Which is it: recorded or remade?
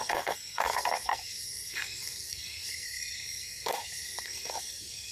remade